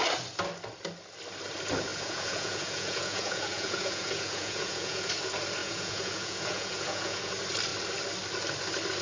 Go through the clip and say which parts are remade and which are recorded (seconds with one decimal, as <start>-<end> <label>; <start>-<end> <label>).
0.0-1.9 recorded; 1.9-5.1 remade; 5.1-5.6 recorded; 5.6-7.3 remade; 7.3-9.0 recorded